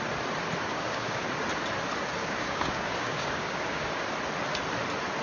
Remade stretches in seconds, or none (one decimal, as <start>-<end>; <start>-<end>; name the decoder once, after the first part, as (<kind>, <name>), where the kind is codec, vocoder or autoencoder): 0.7-1.2 (codec, DAC); 2.2-4.0